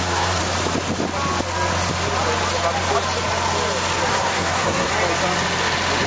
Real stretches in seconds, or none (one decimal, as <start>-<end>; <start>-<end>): 0.4-4.1; 4.9-6.1